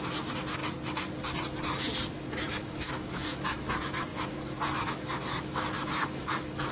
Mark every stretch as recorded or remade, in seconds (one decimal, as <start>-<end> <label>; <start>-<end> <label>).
0.0-0.6 remade; 0.6-2.1 recorded; 2.1-6.7 remade